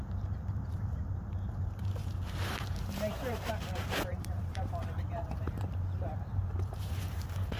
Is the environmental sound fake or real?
fake